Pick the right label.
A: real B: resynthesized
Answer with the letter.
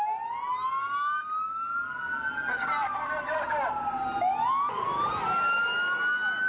A